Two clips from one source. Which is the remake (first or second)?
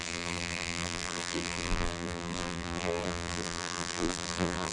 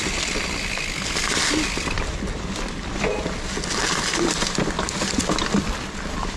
first